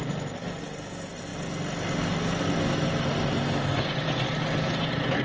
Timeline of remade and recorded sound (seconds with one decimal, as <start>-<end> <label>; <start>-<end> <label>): 0.0-5.2 recorded